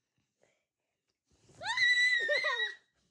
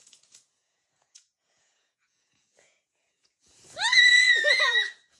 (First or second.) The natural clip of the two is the first